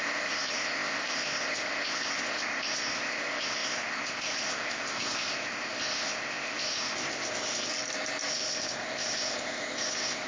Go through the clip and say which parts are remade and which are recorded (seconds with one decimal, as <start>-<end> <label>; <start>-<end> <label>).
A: 0.0-7.7 remade; 7.7-8.3 recorded; 8.3-10.3 remade

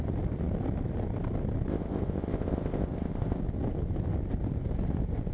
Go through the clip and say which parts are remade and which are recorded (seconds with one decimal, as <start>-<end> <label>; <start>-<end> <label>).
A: 0.0-1.7 recorded; 1.7-3.4 remade; 3.4-5.3 recorded

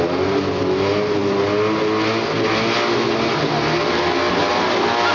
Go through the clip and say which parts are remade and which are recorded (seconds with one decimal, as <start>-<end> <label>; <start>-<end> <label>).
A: 0.0-5.1 recorded

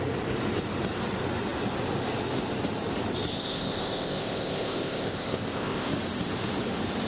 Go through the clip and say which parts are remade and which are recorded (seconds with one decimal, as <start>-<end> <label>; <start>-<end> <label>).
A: 0.0-3.3 recorded; 3.3-5.9 remade; 5.9-7.1 recorded

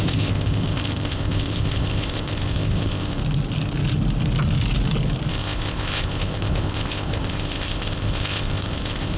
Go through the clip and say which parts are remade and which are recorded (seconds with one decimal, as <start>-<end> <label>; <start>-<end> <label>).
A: 0.0-3.2 remade; 3.2-5.3 recorded; 5.3-9.2 remade

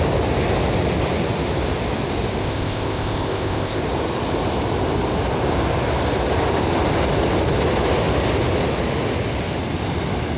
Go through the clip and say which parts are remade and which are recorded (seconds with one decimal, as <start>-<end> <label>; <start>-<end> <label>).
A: 0.0-2.4 recorded; 2.4-3.8 remade; 3.8-10.4 recorded

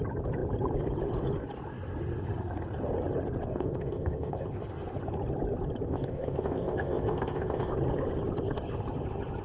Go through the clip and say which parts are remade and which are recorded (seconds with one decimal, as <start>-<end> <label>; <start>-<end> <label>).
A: 0.0-3.5 recorded; 3.5-4.5 remade; 4.5-5.9 recorded; 5.9-7.7 remade; 7.7-9.4 recorded

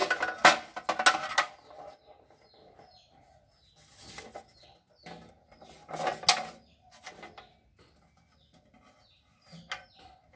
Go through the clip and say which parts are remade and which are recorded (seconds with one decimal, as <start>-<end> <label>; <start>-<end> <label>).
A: 0.0-10.4 recorded